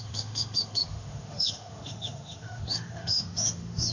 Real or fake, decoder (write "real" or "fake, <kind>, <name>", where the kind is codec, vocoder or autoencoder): fake, autoencoder, DAC-VAE